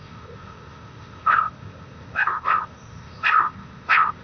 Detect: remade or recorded remade